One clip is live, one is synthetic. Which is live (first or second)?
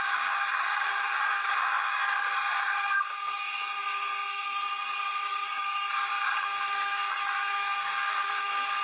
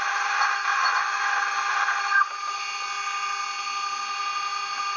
second